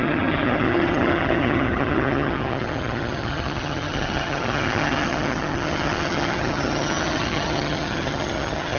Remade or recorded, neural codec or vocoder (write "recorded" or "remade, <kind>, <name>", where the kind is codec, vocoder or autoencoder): remade, vocoder, HiFi-GAN